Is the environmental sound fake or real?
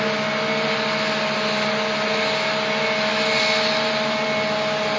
real